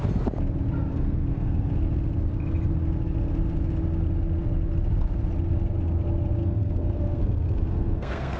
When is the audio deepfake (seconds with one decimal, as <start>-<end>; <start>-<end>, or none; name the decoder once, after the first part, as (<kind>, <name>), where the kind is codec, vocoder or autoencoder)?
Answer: 0.9-1.7 (codec, SNAC); 6.4-8.4